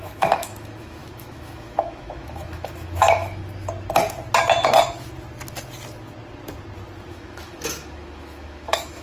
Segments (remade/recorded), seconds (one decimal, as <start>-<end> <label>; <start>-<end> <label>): 0.0-3.4 remade; 3.4-7.1 recorded; 7.1-9.0 remade